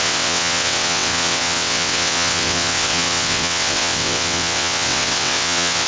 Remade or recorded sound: remade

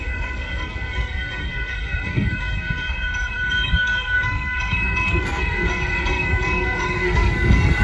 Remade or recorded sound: remade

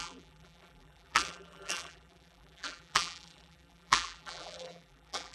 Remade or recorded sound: remade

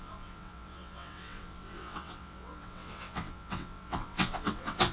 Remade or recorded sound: remade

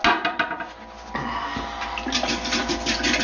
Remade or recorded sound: recorded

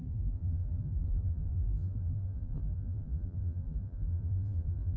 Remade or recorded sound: remade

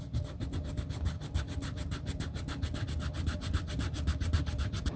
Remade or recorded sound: recorded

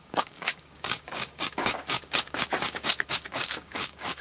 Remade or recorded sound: remade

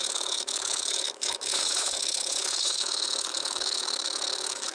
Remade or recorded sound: remade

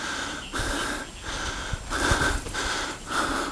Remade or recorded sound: recorded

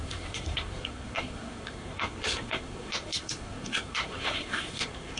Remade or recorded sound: remade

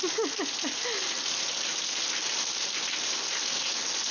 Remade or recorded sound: recorded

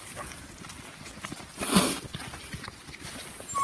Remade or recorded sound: recorded